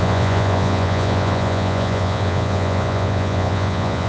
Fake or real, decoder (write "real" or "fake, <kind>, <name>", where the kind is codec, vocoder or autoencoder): fake, vocoder, Vocos